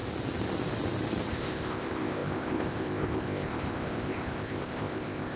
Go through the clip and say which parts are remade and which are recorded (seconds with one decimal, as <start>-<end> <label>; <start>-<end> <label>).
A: 0.0-1.3 recorded; 1.3-5.4 remade